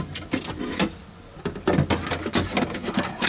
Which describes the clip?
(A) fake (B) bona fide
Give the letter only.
B